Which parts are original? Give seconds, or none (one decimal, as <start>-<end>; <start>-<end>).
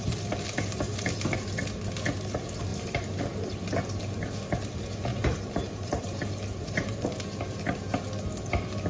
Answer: 1.1-2.7; 3.2-5.1; 7.4-8.9